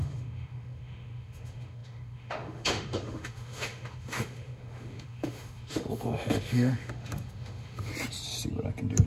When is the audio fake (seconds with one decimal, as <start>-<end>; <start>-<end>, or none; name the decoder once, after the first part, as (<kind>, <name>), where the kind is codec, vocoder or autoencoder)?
0.0-7.9 (autoencoder, DAC-VAE)